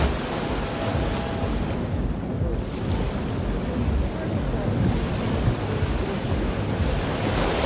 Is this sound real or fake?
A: real